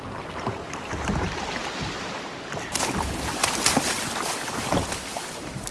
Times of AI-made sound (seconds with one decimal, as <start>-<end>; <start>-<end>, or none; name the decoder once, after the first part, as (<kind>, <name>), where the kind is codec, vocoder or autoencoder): 1.6-2.8 (vocoder, BigVGAN v2); 3.4-5.2